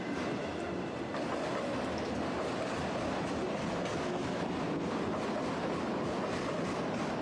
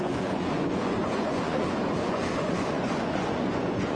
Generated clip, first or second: second